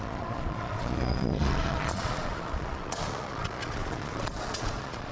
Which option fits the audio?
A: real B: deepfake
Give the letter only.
B